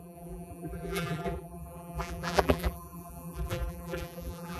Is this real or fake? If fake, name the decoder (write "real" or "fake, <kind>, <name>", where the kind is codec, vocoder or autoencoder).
fake, vocoder, BigVGAN v2